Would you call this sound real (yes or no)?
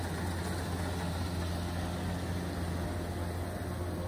yes